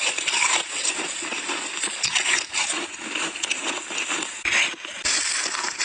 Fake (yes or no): no